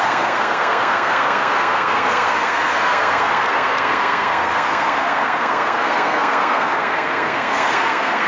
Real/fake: fake